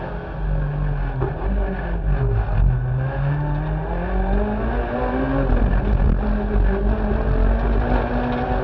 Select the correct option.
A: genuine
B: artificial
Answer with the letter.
A